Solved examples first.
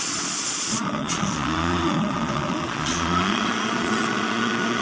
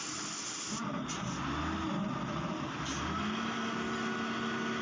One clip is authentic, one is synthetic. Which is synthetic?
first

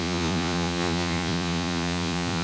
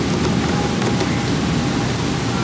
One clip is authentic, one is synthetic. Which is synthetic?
first